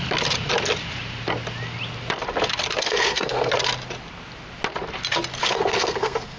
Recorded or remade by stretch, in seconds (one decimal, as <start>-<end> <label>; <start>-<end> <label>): 0.0-2.8 recorded; 2.8-3.5 remade; 3.5-5.4 recorded; 5.4-6.4 remade